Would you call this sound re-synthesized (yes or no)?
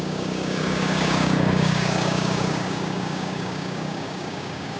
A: yes